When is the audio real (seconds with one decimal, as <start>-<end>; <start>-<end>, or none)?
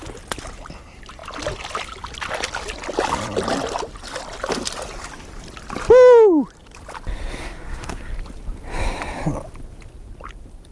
0.0-7.4; 8.1-10.7